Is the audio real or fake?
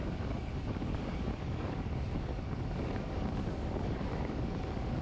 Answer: fake